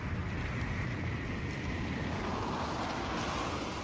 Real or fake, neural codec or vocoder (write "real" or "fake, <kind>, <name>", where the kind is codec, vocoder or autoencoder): real